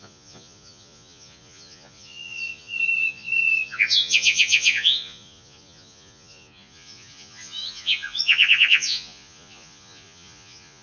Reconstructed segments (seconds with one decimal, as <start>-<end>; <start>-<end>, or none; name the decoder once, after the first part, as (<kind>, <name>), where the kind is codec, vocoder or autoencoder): 0.0-10.8 (vocoder, Vocos)